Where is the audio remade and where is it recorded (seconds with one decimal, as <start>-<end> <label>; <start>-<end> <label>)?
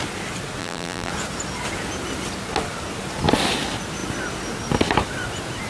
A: 0.0-0.6 recorded; 0.6-1.1 remade; 1.1-5.7 recorded